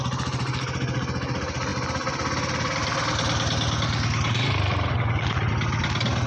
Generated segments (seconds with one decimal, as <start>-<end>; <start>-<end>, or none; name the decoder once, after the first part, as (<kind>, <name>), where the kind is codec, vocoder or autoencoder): none